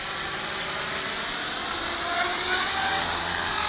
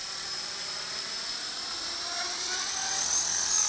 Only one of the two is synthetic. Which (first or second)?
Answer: second